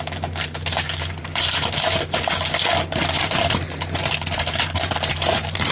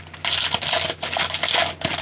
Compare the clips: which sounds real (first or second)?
second